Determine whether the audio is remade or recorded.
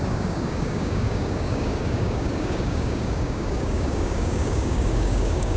remade